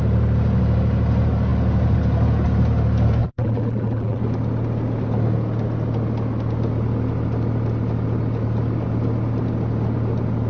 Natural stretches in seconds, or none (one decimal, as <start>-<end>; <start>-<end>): 0.0-3.2; 4.2-10.5